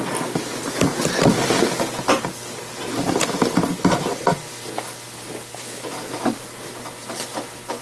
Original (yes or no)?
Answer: yes